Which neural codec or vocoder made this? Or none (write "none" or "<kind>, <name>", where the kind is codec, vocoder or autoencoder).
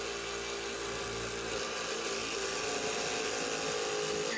none